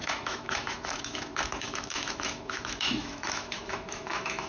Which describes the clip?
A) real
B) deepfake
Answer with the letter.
B